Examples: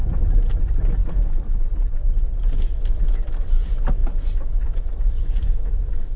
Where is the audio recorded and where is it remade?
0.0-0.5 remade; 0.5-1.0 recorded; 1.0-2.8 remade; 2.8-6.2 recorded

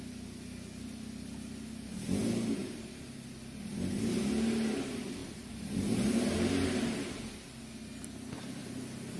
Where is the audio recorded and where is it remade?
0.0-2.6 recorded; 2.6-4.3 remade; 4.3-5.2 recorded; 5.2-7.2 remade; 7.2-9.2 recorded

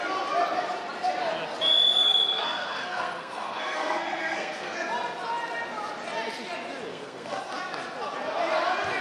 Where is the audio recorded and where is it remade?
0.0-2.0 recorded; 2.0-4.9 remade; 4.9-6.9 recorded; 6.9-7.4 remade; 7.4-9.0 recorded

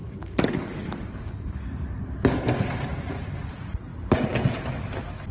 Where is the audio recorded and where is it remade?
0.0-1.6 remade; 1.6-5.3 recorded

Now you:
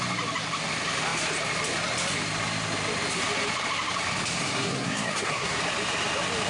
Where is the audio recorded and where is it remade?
0.0-4.4 recorded; 4.4-5.6 remade; 5.6-6.5 recorded

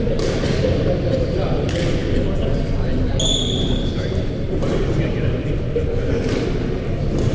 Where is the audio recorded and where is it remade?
0.0-7.3 recorded